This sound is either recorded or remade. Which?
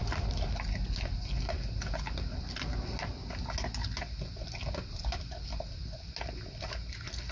recorded